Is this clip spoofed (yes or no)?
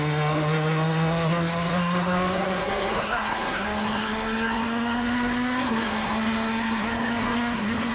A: yes